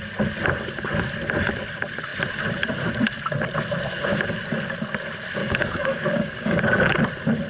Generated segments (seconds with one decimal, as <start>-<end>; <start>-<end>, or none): 5.4-6.6